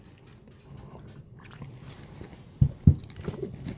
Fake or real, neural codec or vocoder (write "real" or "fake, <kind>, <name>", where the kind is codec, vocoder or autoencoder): real